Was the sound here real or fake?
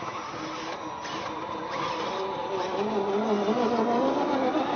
real